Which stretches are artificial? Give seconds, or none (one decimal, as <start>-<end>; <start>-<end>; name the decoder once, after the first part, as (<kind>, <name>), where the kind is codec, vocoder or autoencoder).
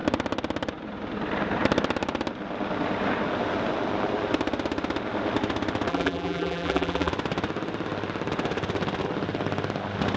5.9-7.1 (vocoder, BigVGAN v2)